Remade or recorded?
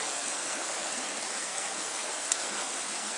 remade